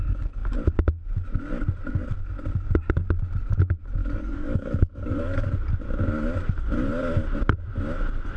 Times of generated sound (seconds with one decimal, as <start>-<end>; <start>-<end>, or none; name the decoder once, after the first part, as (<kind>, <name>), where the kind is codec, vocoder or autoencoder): 4.0-5.5 (codec, DAC)